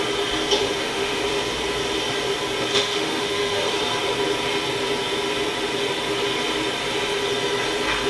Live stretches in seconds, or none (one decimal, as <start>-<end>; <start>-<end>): 0.0-0.6; 1.2-2.7; 3.7-8.1